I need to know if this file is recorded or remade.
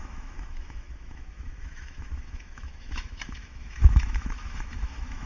remade